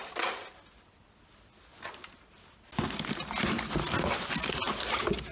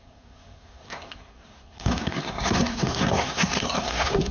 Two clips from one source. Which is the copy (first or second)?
second